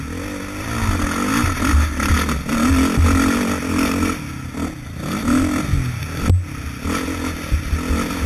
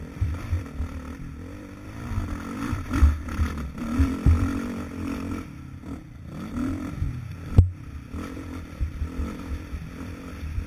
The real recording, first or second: first